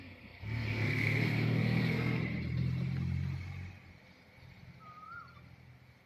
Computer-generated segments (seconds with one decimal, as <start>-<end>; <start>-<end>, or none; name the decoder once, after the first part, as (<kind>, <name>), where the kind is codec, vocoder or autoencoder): 0.0-2.2 (codec, SNAC)